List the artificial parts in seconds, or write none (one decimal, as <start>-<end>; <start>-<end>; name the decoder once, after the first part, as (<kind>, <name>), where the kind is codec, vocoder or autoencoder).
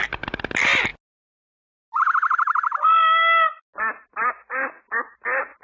none